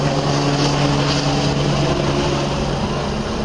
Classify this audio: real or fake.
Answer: real